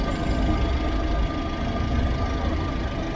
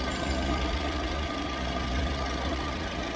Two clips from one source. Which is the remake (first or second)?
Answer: second